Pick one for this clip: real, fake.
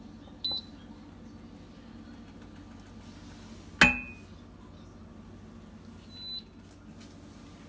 real